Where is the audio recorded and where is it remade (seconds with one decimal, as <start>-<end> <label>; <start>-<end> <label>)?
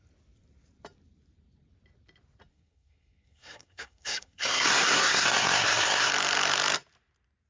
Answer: 0.0-2.5 recorded; 2.5-6.1 remade; 6.1-7.5 recorded